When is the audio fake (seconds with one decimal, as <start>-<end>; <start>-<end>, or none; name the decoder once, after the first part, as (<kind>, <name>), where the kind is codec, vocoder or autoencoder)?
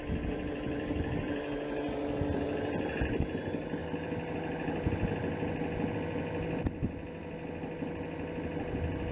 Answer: none